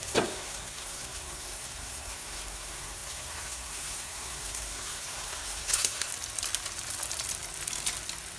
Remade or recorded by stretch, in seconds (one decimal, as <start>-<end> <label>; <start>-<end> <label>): 0.0-6.1 remade; 6.1-8.4 recorded